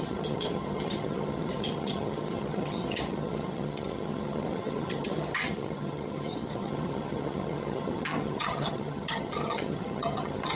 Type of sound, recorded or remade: remade